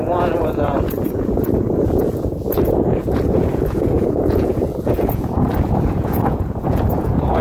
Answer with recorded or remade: remade